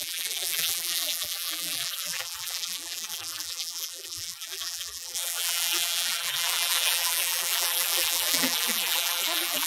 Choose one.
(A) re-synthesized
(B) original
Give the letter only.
A